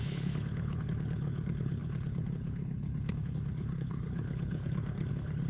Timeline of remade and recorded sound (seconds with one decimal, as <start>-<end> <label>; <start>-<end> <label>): 0.0-5.5 remade